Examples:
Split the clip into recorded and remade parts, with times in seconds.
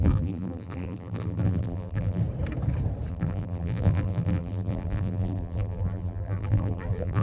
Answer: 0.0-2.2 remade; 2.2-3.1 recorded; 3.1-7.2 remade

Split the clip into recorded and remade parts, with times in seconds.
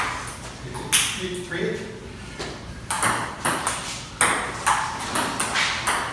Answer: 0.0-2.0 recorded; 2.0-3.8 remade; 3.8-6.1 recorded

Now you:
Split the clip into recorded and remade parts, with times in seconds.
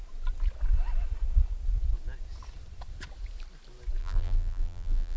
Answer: 0.0-4.0 recorded; 4.0-5.2 remade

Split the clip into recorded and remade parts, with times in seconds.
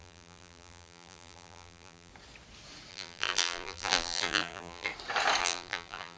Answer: 0.0-2.1 remade; 2.1-2.9 recorded; 2.9-4.9 remade; 4.9-5.4 recorded; 5.4-6.2 remade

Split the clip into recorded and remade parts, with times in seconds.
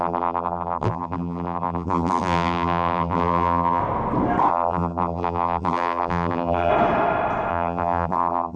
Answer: 0.0-3.8 remade; 3.8-4.5 recorded; 4.5-6.7 remade; 6.7-7.5 recorded; 7.5-8.6 remade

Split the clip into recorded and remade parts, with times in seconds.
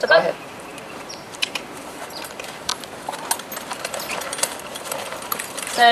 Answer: 0.0-2.7 remade; 2.7-3.7 recorded; 3.7-5.9 remade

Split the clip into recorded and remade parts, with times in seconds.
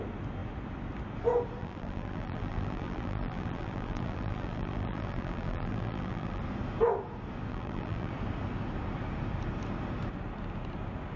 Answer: 0.0-1.6 recorded; 1.6-6.4 remade; 6.4-7.5 recorded; 7.5-8.1 remade; 8.1-11.2 recorded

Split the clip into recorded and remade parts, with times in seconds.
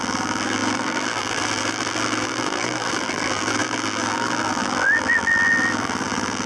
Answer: 0.0-6.5 remade